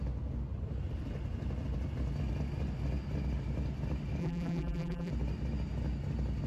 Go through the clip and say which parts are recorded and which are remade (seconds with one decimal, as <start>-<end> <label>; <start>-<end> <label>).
0.0-4.2 recorded; 4.2-5.1 remade; 5.1-6.5 recorded